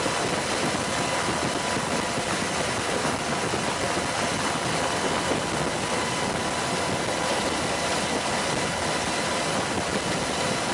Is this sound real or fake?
real